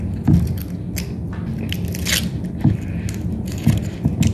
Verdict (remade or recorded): recorded